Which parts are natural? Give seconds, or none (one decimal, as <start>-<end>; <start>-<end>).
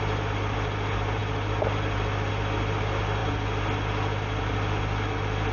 0.0-5.5